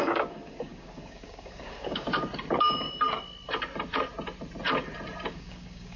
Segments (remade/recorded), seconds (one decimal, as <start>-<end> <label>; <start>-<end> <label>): 0.0-2.1 remade; 2.1-5.3 recorded; 5.3-6.0 remade